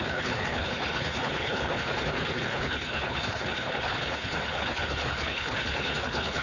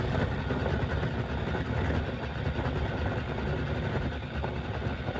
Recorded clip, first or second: second